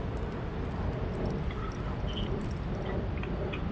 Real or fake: real